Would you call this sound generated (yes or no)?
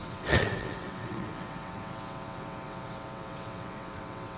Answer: yes